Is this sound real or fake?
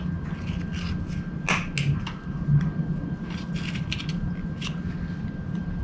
real